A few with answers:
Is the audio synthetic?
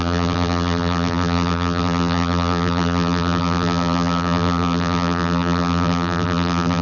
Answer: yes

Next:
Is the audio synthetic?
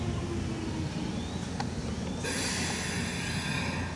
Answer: no